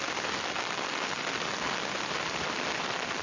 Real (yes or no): yes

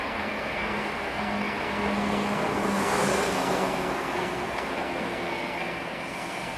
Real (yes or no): no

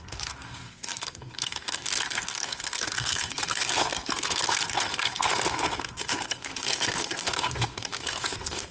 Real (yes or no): no